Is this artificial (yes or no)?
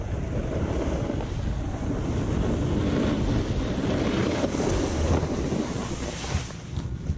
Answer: no